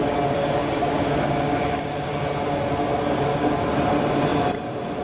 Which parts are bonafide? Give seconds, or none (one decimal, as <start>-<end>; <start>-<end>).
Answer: 0.0-0.6; 1.8-2.9; 3.5-5.0